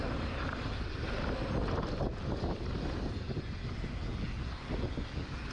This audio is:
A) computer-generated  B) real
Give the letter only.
B